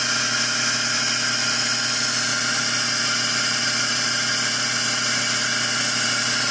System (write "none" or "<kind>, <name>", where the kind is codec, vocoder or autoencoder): none